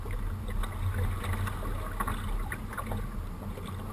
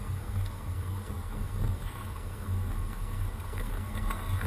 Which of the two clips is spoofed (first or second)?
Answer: second